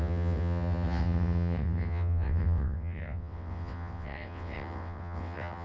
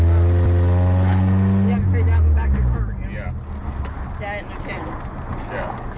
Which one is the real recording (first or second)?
second